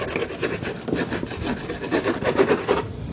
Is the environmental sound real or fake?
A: real